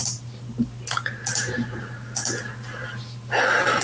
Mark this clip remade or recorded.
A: recorded